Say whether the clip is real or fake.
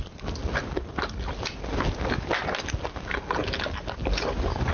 real